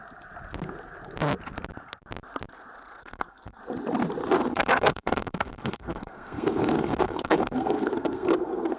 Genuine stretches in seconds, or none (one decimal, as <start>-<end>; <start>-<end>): 0.0-3.0; 3.6-4.2